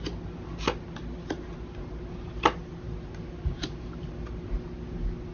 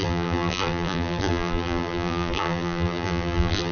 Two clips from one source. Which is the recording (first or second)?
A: first